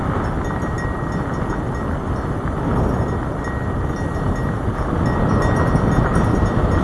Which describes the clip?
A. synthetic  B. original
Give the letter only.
B